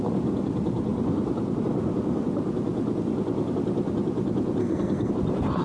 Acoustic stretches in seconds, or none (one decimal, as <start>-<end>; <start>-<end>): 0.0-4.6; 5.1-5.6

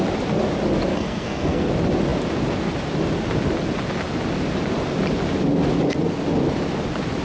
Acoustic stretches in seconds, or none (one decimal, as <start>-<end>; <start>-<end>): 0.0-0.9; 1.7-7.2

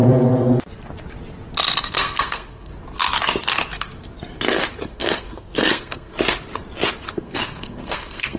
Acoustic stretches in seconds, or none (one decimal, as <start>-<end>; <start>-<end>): 0.0-1.8; 2.7-4.9; 6.1-7.1

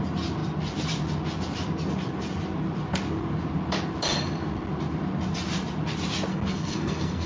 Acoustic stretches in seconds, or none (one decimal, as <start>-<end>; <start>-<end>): 0.0-6.3

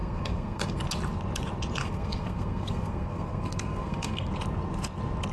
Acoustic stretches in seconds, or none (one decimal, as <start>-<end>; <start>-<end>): 0.8-1.8; 4.3-5.3

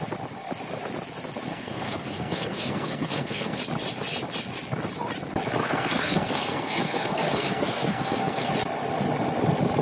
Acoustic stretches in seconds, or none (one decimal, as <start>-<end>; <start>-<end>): 0.0-1.5; 3.6-5.6; 8.5-9.8

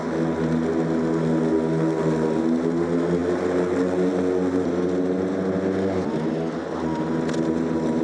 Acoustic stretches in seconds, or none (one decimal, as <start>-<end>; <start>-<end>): 0.0-8.0